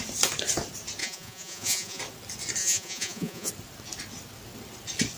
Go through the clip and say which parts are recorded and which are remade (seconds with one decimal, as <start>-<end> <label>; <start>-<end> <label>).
0.0-1.0 recorded; 1.0-2.0 remade; 2.0-2.6 recorded; 2.6-3.5 remade; 3.5-5.2 recorded